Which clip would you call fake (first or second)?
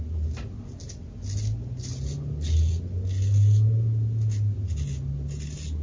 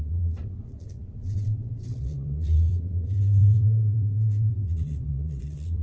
second